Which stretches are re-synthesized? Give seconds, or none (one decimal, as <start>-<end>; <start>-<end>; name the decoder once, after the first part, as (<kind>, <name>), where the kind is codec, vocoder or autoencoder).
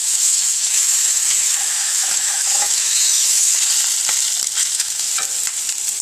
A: 0.0-3.6 (autoencoder, DAC-VAE); 4.6-5.1